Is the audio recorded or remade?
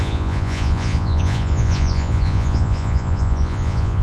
remade